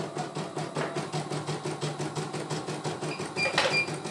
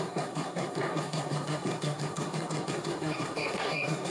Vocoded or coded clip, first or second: second